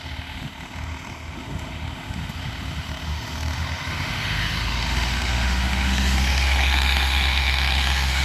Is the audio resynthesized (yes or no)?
yes